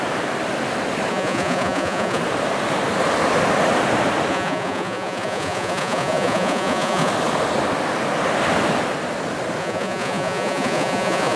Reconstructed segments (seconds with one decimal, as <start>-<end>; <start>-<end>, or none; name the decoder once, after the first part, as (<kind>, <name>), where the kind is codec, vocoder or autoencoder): 1.1-2.2 (vocoder, Vocos); 4.3-7.1; 9.6-11.4